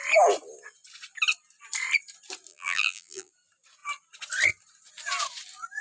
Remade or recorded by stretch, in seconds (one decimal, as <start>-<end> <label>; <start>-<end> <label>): 0.0-2.5 recorded; 2.5-3.3 remade; 3.3-5.8 recorded